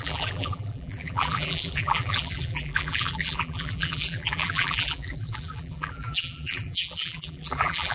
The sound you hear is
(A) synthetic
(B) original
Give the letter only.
A